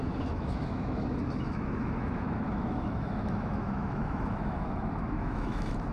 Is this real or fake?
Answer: fake